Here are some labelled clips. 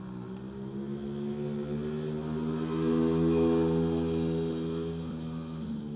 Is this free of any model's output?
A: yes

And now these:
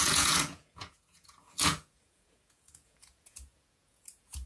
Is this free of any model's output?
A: no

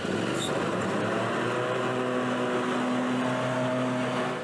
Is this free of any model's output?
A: yes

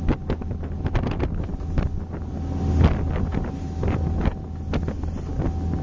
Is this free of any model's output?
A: yes